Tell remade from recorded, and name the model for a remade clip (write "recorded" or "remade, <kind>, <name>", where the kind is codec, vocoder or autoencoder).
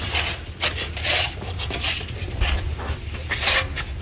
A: recorded